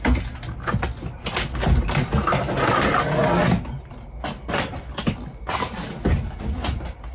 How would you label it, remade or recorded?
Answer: recorded